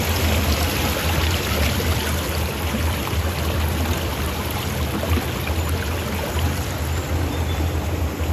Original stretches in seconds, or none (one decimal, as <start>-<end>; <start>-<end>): 0.0-4.1; 4.7-8.3